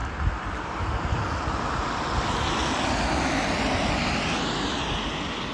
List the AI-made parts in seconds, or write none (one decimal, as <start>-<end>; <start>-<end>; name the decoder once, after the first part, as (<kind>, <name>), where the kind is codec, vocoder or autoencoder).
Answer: none